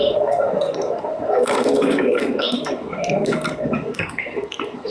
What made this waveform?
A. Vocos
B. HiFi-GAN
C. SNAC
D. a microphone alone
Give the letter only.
C